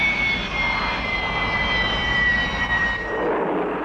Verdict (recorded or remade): recorded